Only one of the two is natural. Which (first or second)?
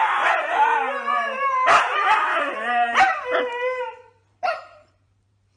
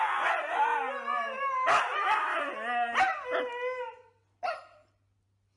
second